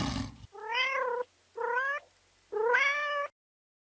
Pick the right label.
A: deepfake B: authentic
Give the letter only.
B